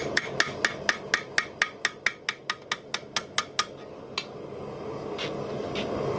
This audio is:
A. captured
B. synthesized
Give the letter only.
A